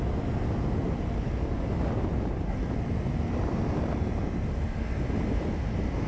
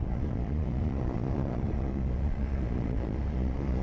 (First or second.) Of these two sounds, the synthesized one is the second